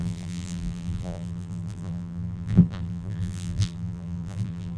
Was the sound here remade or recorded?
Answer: remade